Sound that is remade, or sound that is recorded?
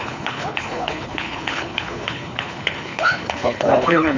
remade